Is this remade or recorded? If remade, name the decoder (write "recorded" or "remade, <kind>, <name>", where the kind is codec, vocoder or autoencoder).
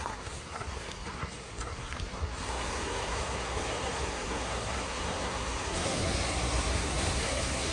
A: remade, codec, SNAC